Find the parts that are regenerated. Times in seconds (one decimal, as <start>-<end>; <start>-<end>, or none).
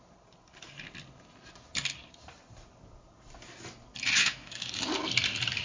4.2-4.7